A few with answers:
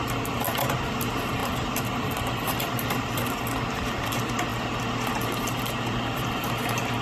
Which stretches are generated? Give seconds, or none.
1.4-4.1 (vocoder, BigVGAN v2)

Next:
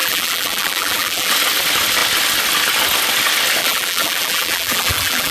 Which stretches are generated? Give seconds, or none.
0.0-1.3 (vocoder, BigVGAN v2); 3.6-5.3

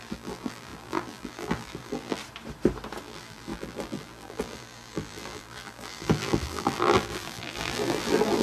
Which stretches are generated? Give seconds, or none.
0.0-2.2 (vocoder, BigVGAN v2); 3.0-8.4

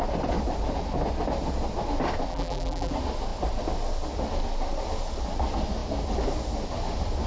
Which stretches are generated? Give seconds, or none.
2.3-2.9 (vocoder, BigVGAN v2)

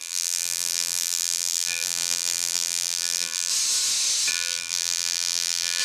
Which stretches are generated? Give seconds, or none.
0.0-3.5 (vocoder, BigVGAN v2); 4.3-5.8